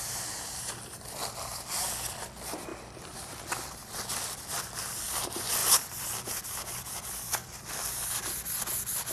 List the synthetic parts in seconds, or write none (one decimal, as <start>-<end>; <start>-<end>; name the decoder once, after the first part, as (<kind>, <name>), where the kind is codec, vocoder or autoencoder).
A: 2.7-4.8 (vocoder, BigVGAN v2); 5.6-6.4